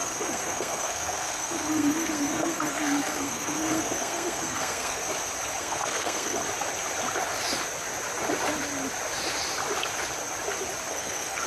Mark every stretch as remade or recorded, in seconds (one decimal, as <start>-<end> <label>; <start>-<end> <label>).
0.0-5.0 remade; 5.0-5.6 recorded; 5.6-6.4 remade; 6.4-10.9 recorded; 10.9-11.5 remade